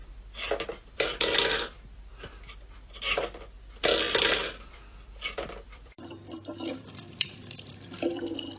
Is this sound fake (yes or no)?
yes